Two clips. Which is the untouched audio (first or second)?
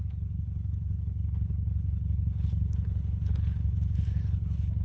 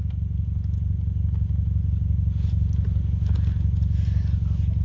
second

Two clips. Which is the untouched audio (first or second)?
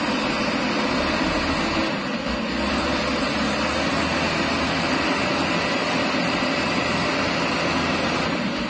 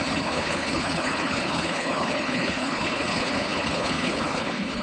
first